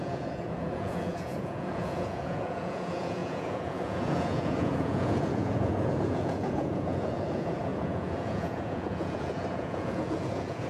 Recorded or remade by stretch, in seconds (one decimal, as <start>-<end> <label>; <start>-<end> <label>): 0.0-10.7 remade